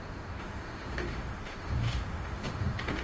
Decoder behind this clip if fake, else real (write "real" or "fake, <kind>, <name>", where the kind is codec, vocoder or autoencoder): fake, autoencoder, DAC-VAE